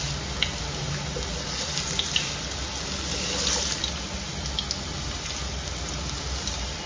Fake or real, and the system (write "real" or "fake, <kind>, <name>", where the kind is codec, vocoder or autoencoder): real